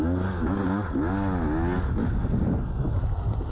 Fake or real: real